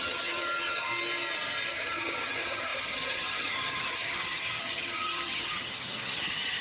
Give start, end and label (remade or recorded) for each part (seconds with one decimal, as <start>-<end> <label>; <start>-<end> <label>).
0.0-0.9 remade; 0.9-1.7 recorded; 1.7-6.6 remade